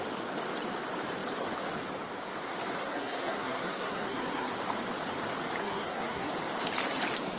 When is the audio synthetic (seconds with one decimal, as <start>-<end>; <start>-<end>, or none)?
2.8-4.5; 5.6-6.3